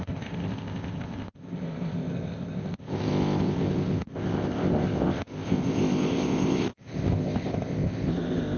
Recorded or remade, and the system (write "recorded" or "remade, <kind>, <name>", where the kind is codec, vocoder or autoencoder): remade, codec, ZipCodec